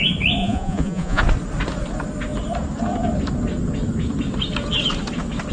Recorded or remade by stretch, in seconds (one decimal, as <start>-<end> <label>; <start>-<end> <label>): 0.0-0.4 recorded; 0.4-1.2 remade; 1.2-5.5 recorded